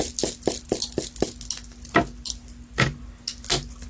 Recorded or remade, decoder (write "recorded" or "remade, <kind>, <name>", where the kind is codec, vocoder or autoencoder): recorded